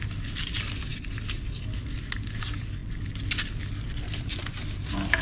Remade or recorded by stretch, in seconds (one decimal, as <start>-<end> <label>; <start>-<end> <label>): 0.0-5.2 recorded